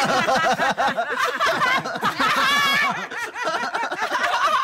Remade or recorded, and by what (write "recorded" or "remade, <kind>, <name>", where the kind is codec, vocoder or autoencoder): recorded